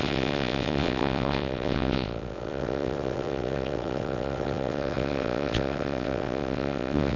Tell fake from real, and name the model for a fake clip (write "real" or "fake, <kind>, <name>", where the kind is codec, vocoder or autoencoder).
fake, vocoder, WaveNeXt